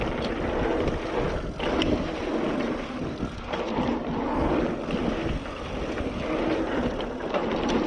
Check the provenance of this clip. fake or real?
real